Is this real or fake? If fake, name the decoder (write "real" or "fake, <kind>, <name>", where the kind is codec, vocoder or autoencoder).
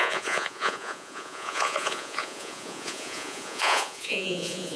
fake, vocoder, Vocos